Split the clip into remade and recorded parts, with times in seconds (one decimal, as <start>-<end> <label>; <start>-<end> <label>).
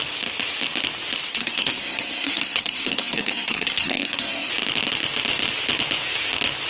0.0-1.3 recorded; 1.3-4.5 remade; 4.5-6.7 recorded